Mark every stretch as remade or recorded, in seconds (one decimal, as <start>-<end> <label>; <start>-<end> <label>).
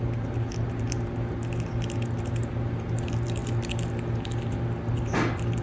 0.0-5.6 recorded